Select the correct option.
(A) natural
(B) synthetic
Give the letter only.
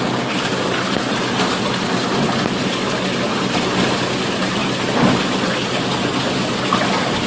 A